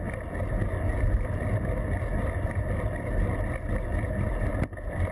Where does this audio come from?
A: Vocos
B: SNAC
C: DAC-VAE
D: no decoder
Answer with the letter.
D